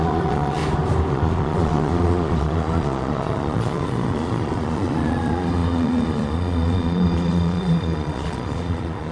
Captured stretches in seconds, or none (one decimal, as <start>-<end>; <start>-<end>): 0.6-1.1